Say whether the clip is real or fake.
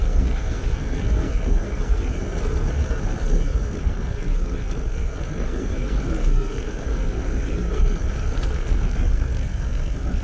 fake